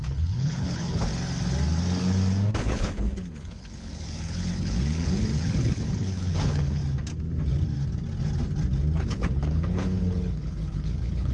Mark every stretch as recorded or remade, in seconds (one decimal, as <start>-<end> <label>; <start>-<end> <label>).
0.0-1.1 remade; 1.1-2.6 recorded; 2.6-6.8 remade; 6.8-9.0 recorded; 9.0-11.3 remade

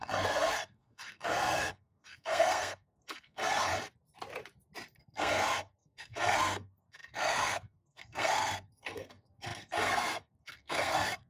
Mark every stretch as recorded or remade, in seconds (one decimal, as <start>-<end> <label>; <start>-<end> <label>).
0.0-3.7 remade; 3.7-5.0 recorded; 5.0-11.3 remade

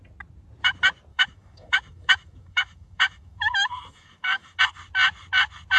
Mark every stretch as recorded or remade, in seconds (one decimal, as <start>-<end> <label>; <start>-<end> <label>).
0.0-1.1 recorded; 1.1-4.6 remade; 4.6-5.8 recorded